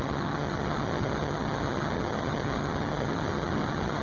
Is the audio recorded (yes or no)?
no